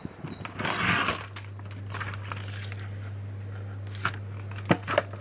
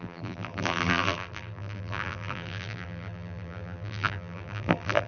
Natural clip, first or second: first